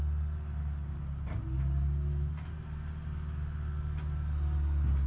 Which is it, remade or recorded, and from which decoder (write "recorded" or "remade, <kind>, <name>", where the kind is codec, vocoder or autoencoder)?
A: recorded